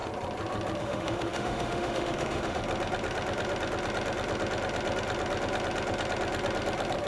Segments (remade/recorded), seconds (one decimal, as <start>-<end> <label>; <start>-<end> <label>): 0.0-0.8 recorded; 0.8-2.6 remade; 2.6-7.1 recorded